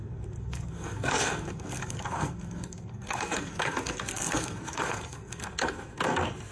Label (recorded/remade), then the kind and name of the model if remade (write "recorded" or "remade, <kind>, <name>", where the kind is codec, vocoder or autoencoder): remade, codec, SNAC